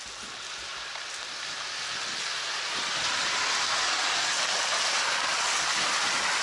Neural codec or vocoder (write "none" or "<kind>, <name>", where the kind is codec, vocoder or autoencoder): none